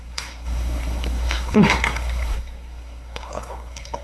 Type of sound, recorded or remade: remade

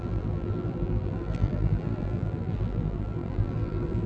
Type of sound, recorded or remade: remade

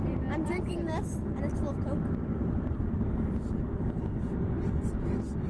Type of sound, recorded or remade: recorded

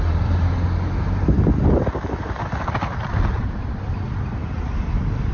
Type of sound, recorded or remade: recorded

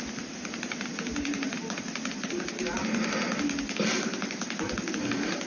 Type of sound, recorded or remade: recorded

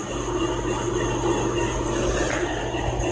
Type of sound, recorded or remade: recorded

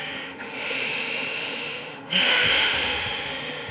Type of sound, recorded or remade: remade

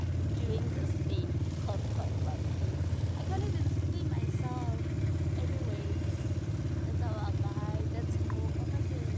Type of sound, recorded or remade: recorded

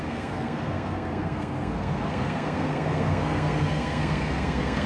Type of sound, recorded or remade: remade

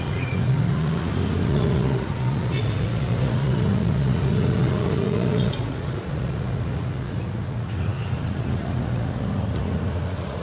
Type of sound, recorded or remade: remade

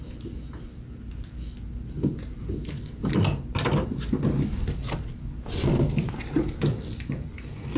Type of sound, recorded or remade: recorded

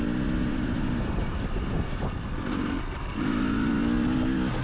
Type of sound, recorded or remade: recorded